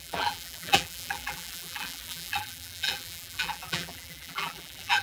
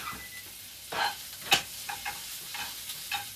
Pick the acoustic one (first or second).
second